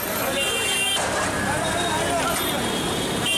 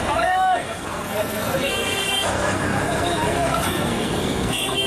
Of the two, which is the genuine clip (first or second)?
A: first